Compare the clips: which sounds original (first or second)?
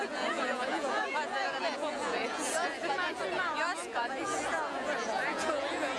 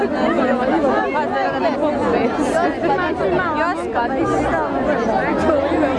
second